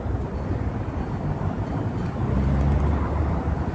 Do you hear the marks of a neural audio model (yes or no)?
no